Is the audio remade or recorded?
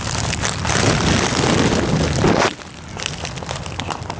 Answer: recorded